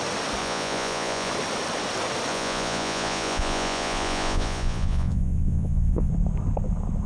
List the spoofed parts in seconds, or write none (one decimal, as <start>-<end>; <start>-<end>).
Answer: 0.4-1.3; 2.3-6.1